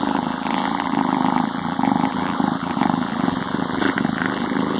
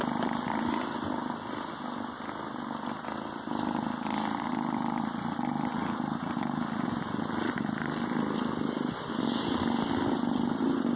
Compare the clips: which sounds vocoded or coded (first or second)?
first